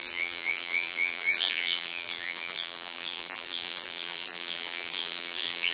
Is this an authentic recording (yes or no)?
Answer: no